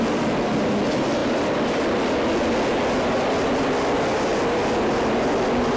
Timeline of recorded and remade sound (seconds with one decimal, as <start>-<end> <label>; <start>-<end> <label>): 0.0-5.8 recorded